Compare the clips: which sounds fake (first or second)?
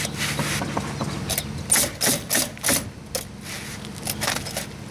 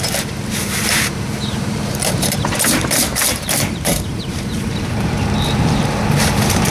second